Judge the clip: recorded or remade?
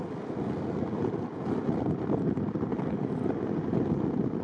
recorded